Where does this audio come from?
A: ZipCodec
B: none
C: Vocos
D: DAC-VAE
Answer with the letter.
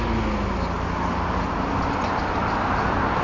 B